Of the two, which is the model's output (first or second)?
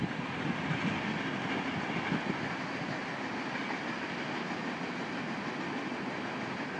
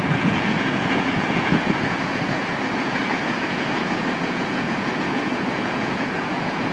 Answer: second